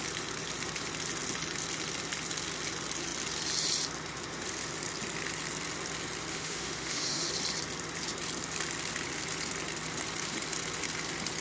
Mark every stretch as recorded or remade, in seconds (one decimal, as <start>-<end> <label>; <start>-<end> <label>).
0.0-6.3 recorded; 6.3-7.3 remade; 7.3-11.4 recorded